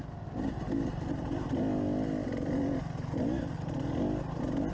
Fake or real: real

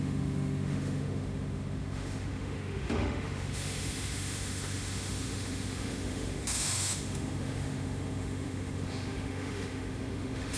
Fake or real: fake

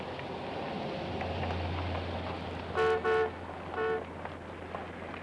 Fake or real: real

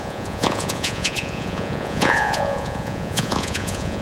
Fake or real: fake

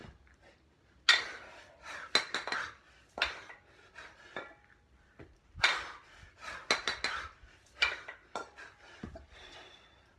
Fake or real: real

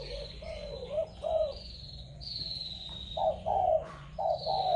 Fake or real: fake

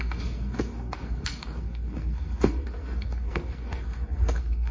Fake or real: fake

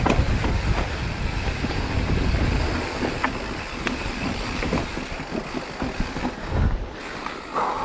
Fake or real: real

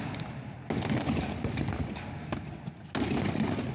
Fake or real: real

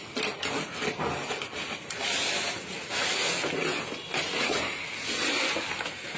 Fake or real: real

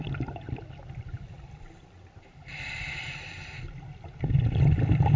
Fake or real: real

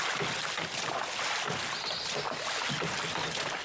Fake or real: real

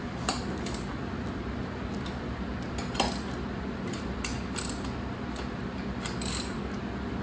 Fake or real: fake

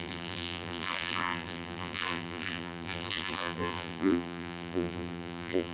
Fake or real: fake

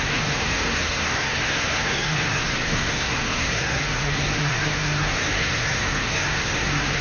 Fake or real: fake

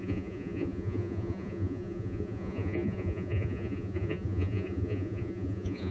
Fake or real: fake